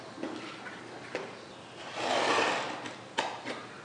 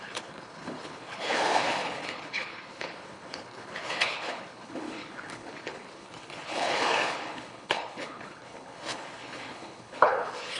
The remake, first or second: second